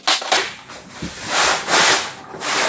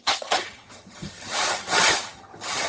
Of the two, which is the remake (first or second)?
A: second